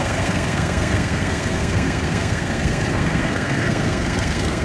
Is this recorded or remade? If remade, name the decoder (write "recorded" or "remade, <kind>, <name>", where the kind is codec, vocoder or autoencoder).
remade, codec, SNAC